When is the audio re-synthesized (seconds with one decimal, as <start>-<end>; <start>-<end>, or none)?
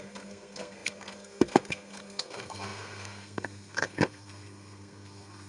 0.0-5.5